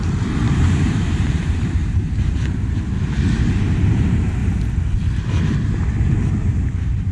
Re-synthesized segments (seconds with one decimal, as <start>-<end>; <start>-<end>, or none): 0.0-4.4; 6.3-7.1